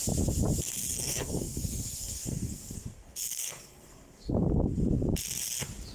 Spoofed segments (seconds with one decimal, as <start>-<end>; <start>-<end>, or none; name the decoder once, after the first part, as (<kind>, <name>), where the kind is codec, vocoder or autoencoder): 0.8-4.3 (codec, SNAC)